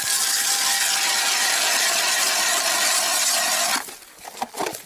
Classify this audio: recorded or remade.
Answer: recorded